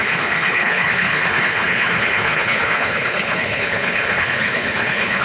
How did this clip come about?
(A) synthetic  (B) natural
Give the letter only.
A